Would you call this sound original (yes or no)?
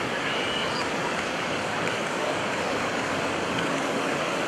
no